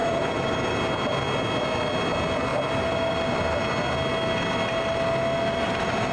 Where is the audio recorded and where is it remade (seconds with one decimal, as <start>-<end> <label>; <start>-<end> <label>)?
0.0-0.7 remade; 0.7-6.1 recorded